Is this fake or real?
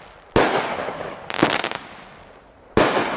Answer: real